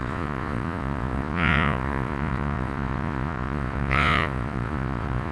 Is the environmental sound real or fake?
fake